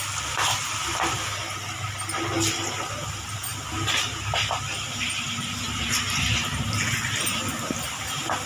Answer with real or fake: fake